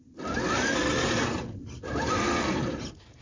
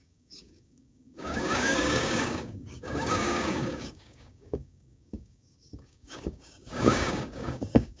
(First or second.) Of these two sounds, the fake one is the second